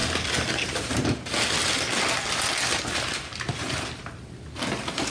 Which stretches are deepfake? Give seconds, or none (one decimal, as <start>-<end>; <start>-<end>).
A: none